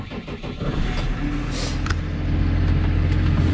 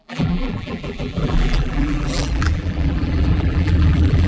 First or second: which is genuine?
first